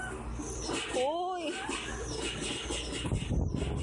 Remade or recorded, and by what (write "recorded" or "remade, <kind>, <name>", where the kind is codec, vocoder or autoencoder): recorded